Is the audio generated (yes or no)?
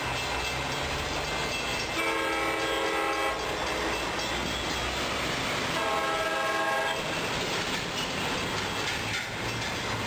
no